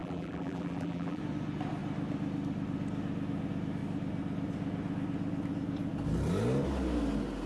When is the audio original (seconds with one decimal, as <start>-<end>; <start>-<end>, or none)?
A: 1.2-7.5